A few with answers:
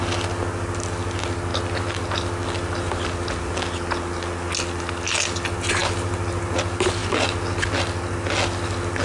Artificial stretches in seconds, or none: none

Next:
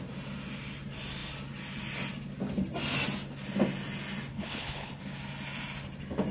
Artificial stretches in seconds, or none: 4.3-5.0 (codec, HILCodec)

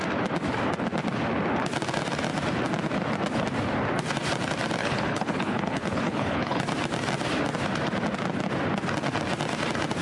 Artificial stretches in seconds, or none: 4.8-6.6 (codec, HILCodec)

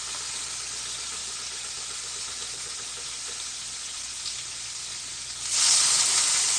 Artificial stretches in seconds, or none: none

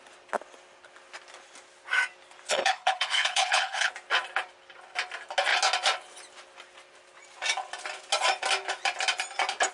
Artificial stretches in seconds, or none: 2.5-3.9 (codec, HILCodec)

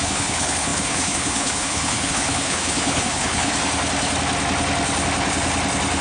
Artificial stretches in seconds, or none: 0.0-3.5 (codec, HILCodec)